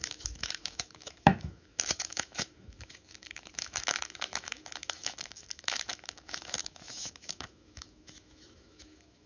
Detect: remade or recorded remade